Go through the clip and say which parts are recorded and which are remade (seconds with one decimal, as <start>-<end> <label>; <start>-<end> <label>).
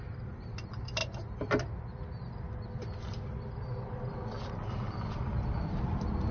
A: 0.0-6.3 recorded